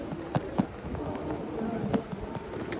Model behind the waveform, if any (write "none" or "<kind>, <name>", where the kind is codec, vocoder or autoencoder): none